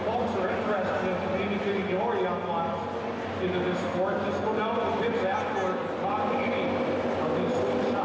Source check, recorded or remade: recorded